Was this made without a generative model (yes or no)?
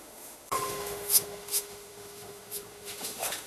no